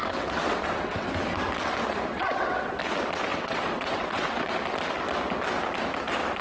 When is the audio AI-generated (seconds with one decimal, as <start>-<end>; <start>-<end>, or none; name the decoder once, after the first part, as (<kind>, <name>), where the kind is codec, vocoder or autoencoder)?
0.0-1.1 (vocoder, WaveNeXt); 2.1-2.8; 3.3-4.5